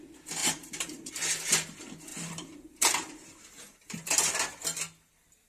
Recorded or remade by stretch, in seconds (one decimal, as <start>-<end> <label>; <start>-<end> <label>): 0.0-0.4 recorded; 0.4-1.1 remade; 1.1-2.1 recorded; 2.1-4.3 remade; 4.3-5.5 recorded